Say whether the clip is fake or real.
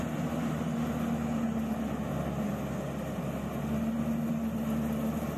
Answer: real